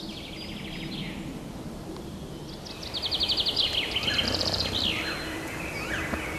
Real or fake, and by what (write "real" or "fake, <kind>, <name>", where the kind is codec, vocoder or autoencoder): real